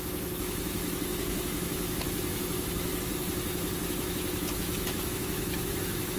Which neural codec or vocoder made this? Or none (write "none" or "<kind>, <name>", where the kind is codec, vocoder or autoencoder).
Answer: autoencoder, DAC-VAE